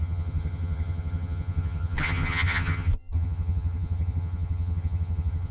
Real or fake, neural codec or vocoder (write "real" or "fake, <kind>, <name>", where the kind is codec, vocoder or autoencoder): fake, vocoder, HiFi-GAN